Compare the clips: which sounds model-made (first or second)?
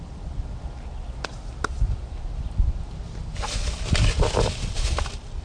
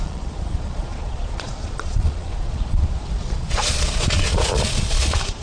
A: second